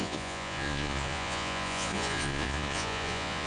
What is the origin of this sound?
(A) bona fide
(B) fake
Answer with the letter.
B